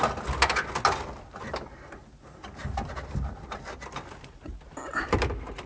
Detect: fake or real real